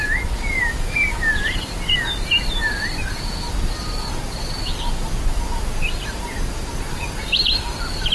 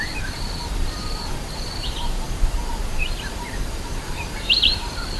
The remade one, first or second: second